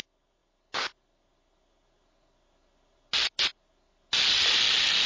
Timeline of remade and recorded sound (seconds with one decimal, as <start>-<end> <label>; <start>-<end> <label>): 0.0-5.1 recorded